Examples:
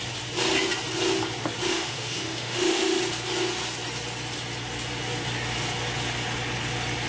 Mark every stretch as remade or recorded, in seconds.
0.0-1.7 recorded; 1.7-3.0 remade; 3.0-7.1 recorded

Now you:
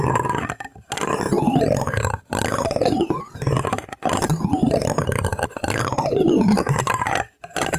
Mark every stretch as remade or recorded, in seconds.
0.0-7.8 recorded